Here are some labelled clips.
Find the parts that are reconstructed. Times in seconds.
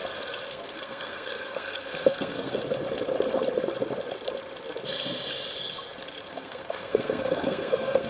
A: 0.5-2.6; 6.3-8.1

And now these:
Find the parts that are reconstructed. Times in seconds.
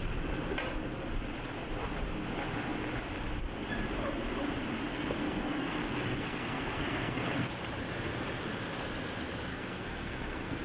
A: 4.9-7.5; 9.5-10.6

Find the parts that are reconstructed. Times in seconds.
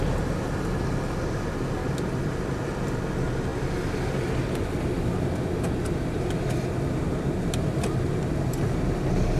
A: none